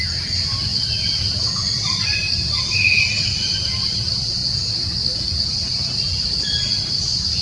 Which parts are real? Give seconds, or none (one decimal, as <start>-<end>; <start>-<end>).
0.0-7.4